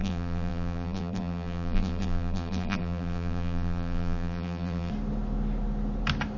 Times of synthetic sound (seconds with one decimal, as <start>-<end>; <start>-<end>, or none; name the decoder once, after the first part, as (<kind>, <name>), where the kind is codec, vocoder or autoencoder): 0.0-4.9 (vocoder, BigVGAN v2)